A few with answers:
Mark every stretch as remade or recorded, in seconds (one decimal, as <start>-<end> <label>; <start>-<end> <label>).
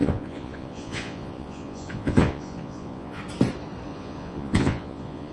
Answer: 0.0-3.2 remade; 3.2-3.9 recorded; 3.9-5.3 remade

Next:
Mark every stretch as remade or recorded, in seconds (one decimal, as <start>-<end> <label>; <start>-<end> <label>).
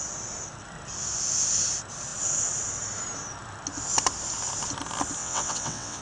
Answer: 0.0-5.2 recorded; 5.2-6.0 remade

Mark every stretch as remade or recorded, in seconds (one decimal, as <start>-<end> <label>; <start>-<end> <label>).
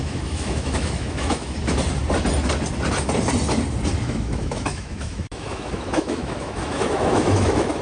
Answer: 0.0-1.6 remade; 1.6-4.0 recorded; 4.0-7.8 remade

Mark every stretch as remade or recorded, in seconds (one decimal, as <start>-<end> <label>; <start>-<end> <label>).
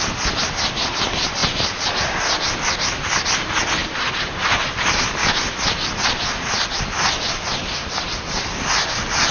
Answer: 0.0-9.3 recorded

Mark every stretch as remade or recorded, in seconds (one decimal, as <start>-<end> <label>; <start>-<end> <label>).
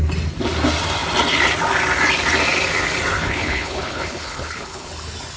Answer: 0.0-3.2 recorded; 3.2-4.9 remade; 4.9-5.4 recorded